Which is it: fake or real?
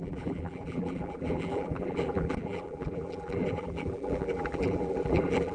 fake